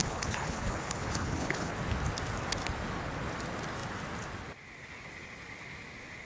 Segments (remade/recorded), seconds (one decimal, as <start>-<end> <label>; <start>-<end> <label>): 0.0-1.7 remade; 1.7-6.3 recorded